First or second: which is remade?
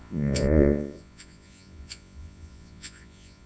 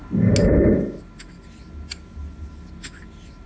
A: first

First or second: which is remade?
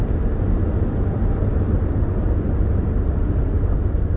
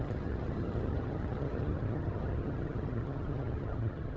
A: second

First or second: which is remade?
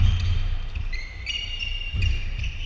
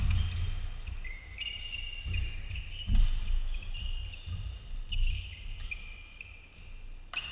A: first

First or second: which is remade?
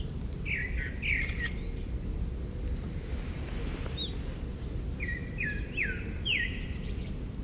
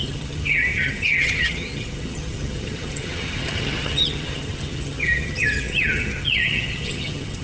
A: second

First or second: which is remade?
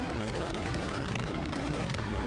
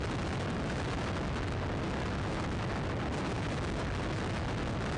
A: first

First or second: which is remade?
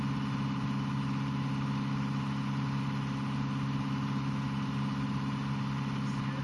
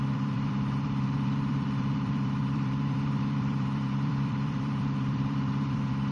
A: second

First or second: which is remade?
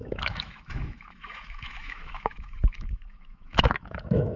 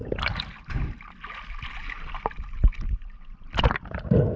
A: first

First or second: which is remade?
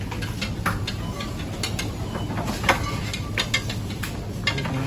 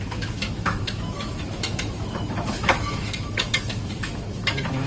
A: second